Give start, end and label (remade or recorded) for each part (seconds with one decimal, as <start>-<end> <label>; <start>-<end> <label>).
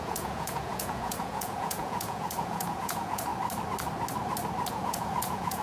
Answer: 0.0-3.3 remade; 3.3-4.7 recorded; 4.7-5.6 remade